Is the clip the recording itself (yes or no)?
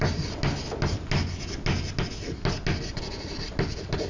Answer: yes